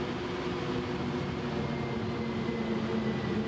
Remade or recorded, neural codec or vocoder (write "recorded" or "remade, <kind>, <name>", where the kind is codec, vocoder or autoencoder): recorded